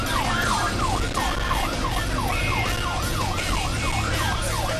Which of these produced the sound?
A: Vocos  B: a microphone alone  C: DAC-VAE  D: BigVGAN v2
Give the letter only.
B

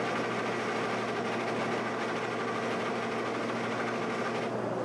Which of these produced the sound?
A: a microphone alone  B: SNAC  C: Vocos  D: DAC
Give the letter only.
A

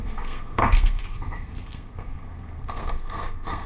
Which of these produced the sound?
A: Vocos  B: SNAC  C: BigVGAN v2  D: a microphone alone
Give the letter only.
B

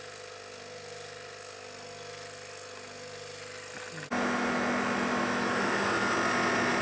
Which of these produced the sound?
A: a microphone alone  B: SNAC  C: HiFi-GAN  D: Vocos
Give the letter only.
A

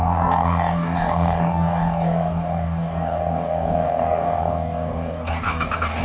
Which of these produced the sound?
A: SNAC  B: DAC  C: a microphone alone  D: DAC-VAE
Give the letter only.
B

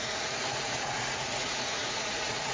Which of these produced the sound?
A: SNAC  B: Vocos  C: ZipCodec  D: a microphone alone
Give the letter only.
B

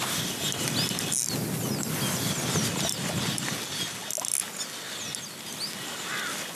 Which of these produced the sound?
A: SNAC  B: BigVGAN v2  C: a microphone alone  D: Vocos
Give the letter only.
C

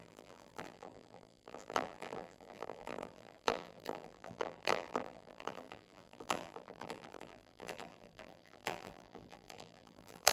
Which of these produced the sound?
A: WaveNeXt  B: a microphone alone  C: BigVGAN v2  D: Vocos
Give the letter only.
C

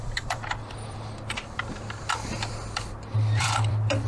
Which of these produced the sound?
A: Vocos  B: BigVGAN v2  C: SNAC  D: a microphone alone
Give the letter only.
B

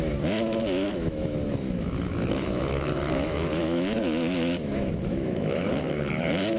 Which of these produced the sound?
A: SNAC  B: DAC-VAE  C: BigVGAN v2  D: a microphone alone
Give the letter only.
B